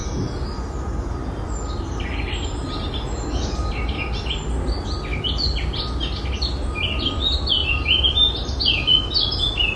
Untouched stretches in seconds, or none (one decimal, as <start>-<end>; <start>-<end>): 0.0-9.8